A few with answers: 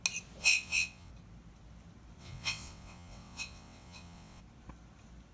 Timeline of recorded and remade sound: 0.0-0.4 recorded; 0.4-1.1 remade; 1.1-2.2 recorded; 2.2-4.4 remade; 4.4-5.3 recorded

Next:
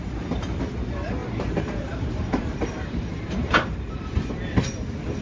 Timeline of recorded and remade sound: 0.0-1.2 recorded; 1.2-4.3 remade; 4.3-5.2 recorded